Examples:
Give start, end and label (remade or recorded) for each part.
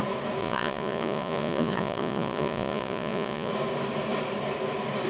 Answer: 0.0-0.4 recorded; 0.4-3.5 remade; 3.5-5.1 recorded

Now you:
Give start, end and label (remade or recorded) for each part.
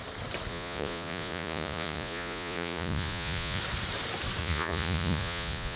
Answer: 0.0-0.5 recorded; 0.5-3.6 remade; 3.6-4.4 recorded; 4.4-5.8 remade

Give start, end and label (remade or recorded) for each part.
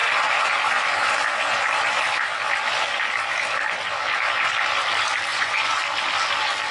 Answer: 0.0-5.3 recorded; 5.3-5.8 remade; 5.8-6.7 recorded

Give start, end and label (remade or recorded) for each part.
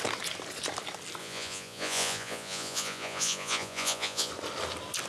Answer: 0.0-1.2 recorded; 1.2-4.3 remade; 4.3-5.1 recorded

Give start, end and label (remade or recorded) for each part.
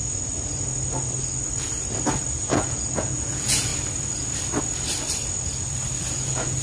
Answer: 0.0-2.3 recorded; 2.3-3.7 remade; 3.7-6.1 recorded; 6.1-6.6 remade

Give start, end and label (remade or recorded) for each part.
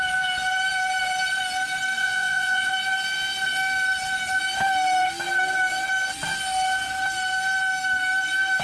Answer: 0.0-2.0 recorded; 2.0-2.7 remade; 2.7-8.6 recorded